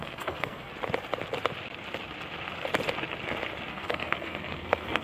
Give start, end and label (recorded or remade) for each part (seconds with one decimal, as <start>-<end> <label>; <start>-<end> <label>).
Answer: 0.0-0.7 remade; 0.7-3.7 recorded; 3.7-5.0 remade